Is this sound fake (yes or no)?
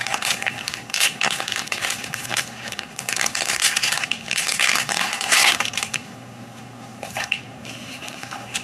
yes